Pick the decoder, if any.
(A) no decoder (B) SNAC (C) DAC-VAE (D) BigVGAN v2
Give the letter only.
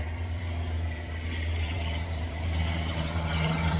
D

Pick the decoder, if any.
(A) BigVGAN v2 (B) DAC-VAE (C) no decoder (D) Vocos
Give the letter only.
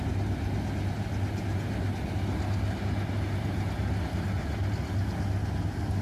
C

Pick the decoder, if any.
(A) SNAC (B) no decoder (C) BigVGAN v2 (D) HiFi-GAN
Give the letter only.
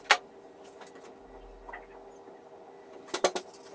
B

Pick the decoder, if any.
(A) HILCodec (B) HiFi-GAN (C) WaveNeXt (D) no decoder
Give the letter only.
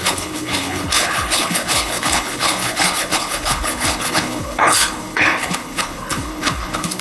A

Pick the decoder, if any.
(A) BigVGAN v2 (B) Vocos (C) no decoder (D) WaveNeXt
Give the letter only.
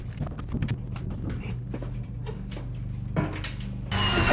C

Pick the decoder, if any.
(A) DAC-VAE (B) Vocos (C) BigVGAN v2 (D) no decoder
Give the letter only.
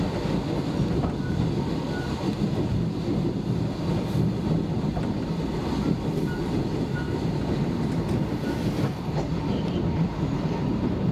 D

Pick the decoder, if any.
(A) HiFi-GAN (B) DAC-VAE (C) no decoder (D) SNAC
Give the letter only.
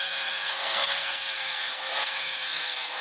D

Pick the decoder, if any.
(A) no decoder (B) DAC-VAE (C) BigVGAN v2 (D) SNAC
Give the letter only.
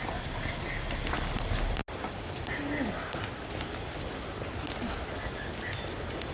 A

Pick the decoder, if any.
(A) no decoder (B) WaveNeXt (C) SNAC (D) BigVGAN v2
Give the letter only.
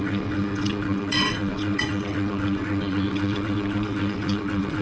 B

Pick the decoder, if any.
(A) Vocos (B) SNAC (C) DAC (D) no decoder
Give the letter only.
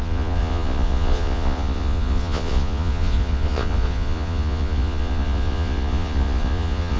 A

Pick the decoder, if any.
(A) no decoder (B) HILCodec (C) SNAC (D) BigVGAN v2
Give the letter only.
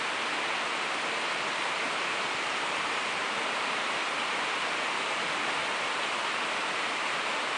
A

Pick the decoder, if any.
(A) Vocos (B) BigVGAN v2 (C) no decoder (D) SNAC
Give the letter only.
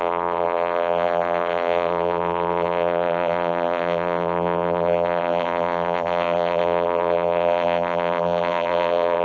B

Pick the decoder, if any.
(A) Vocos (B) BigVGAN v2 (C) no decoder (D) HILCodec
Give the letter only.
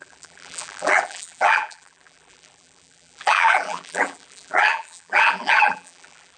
B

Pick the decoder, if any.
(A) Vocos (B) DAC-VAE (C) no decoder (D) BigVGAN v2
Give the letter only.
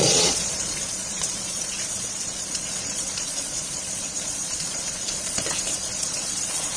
A